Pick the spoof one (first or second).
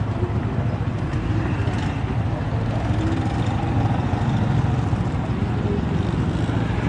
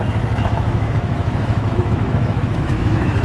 second